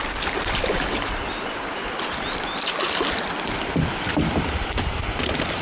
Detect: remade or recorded recorded